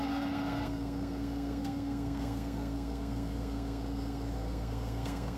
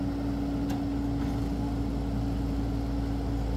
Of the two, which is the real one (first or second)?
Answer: second